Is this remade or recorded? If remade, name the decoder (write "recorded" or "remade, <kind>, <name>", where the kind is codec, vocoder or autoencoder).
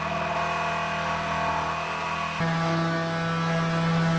recorded